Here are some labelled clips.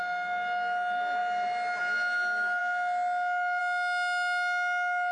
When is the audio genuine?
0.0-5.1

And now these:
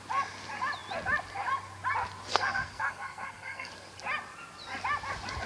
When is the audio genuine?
0.0-2.3; 3.7-5.5

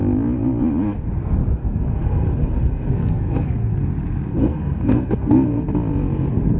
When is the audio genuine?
0.0-1.6; 2.3-2.7; 3.7-4.3; 5.6-6.6

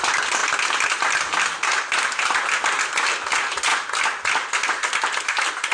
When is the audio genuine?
0.0-5.7

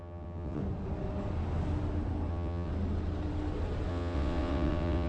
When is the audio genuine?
0.6-2.3; 2.7-3.9